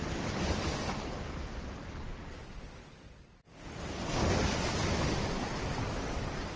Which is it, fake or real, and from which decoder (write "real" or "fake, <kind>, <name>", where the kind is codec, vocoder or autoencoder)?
real